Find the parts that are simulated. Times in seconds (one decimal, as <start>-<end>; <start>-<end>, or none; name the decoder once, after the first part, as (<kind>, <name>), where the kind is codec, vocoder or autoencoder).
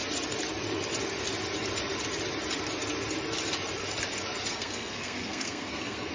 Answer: 4.5-6.1 (codec, SNAC)